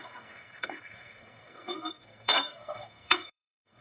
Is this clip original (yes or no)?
no